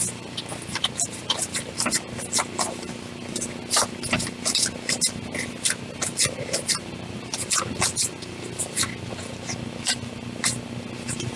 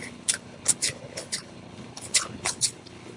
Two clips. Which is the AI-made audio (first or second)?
second